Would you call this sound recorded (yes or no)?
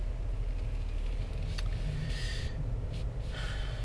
yes